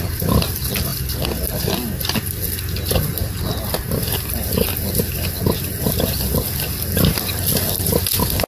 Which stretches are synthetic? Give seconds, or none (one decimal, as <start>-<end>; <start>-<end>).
none